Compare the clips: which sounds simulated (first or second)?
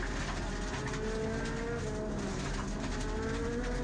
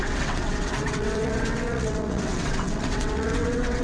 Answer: second